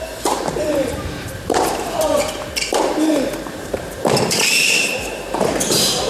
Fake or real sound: fake